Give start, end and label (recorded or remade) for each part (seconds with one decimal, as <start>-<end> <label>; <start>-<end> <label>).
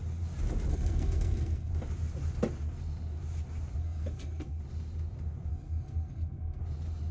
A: 0.0-0.7 recorded; 0.7-1.7 remade; 1.7-3.8 recorded; 3.8-4.6 remade; 4.6-5.5 recorded; 5.5-6.6 remade; 6.6-7.1 recorded